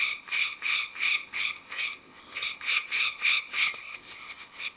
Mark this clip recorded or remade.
remade